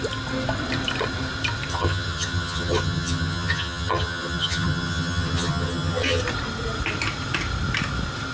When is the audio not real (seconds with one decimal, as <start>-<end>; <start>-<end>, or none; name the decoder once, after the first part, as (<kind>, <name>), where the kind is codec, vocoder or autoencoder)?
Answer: 1.7-6.2 (vocoder, HiFi-GAN)